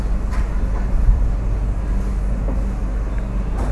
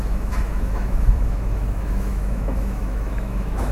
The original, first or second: first